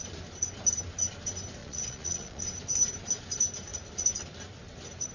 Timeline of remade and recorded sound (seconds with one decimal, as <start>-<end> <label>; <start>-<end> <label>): 0.0-1.6 recorded; 1.6-2.4 remade; 2.4-5.1 recorded